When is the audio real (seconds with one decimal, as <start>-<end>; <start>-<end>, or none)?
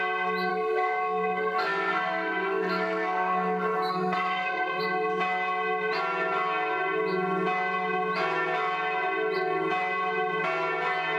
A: 0.0-0.5; 4.8-11.2